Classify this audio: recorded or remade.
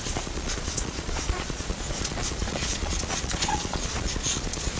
remade